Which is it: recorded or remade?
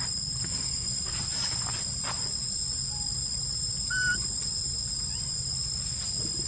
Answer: recorded